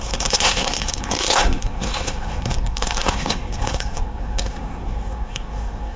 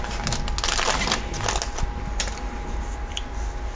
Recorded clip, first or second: second